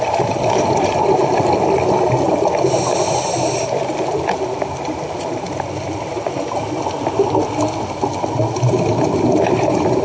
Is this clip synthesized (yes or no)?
no